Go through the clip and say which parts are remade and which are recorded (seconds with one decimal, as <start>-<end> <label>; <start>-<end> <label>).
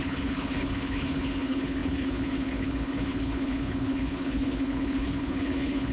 0.0-5.9 remade